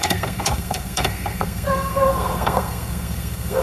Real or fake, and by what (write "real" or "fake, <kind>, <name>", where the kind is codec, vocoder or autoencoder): fake, codec, SNAC